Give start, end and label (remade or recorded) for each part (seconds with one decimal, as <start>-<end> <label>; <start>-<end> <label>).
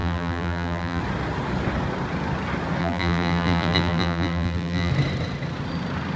0.0-1.0 remade; 1.0-2.8 recorded; 2.8-4.9 remade; 4.9-6.2 recorded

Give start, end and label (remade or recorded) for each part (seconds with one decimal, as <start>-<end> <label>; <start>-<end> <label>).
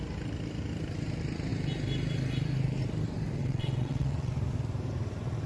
0.0-3.4 recorded; 3.4-4.3 remade; 4.3-5.5 recorded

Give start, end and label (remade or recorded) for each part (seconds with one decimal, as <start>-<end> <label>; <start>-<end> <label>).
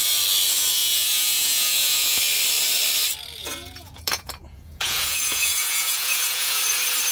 0.0-0.8 recorded; 0.8-2.2 remade; 2.2-3.4 recorded; 3.4-6.6 remade; 6.6-7.1 recorded